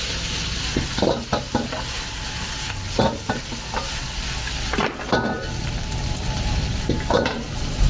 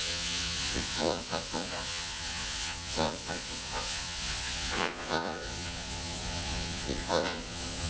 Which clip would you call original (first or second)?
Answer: first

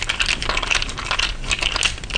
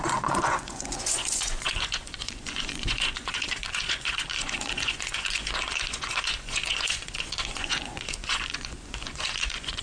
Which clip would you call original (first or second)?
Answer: first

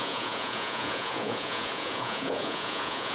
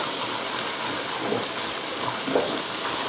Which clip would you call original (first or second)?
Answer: second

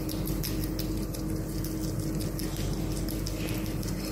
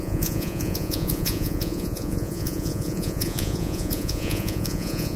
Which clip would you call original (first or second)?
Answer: first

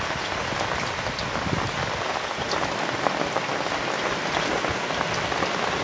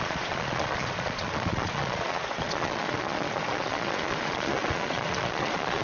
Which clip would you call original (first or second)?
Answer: first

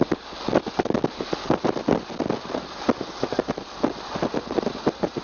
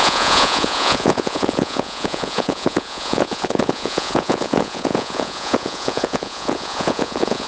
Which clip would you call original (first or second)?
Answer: first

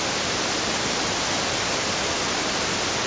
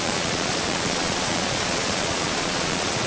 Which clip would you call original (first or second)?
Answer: first